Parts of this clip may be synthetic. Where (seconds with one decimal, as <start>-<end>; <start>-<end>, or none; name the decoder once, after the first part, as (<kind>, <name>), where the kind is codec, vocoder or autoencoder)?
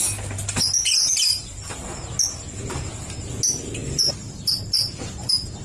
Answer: 3.8-5.6 (vocoder, BigVGAN v2)